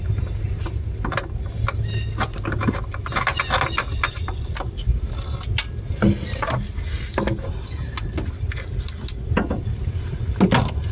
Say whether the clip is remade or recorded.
recorded